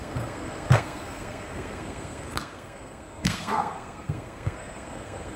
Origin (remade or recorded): remade